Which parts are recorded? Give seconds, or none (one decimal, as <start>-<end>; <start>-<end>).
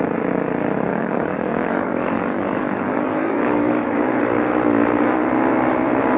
0.0-0.9; 4.4-6.2